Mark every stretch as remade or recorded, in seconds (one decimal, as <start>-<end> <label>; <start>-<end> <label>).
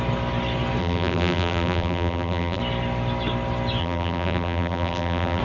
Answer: 0.0-0.8 recorded; 0.8-2.6 remade; 2.6-3.8 recorded; 3.8-5.4 remade